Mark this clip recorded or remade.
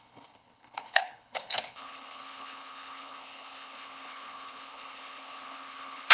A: remade